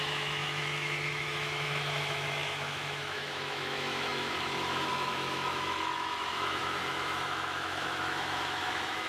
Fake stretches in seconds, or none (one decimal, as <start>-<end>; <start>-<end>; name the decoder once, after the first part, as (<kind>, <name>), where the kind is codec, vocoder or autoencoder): 0.0-9.1 (autoencoder, DAC-VAE)